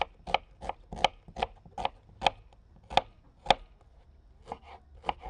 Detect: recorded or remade recorded